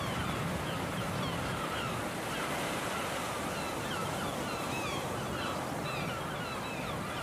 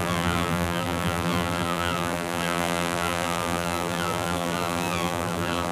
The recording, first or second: first